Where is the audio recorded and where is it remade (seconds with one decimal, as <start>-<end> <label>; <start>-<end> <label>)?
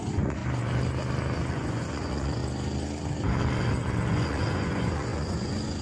0.0-0.4 remade; 0.4-1.5 recorded; 1.5-2.4 remade; 2.4-4.1 recorded; 4.1-5.8 remade